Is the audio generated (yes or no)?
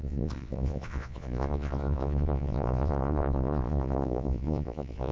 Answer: yes